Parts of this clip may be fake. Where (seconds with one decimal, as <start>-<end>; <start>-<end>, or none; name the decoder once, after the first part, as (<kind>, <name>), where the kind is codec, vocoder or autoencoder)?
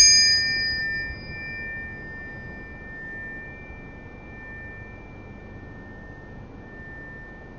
none